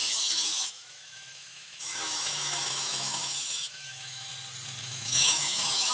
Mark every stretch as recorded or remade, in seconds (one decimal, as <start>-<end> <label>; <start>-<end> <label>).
0.0-4.3 remade; 4.3-4.8 recorded; 4.8-5.9 remade